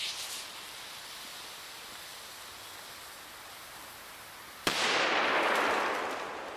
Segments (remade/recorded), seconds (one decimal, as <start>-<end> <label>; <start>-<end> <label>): 0.0-6.6 recorded